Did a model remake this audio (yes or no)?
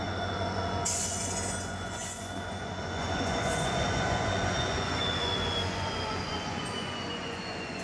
yes